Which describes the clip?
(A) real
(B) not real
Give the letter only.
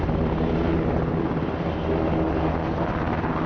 A